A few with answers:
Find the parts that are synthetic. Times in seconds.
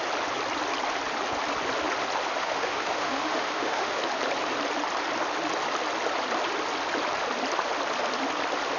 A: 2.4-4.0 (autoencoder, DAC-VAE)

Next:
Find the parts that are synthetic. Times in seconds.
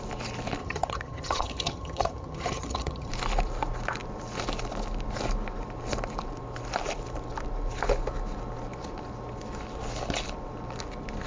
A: 0.6-3.1 (vocoder, HiFi-GAN)